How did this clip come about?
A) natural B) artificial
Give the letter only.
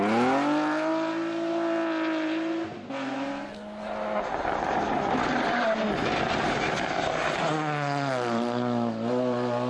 A